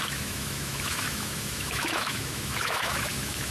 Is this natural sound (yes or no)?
no